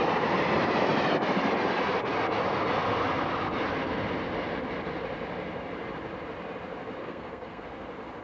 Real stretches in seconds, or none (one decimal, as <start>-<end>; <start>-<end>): 0.0-7.0; 7.6-8.2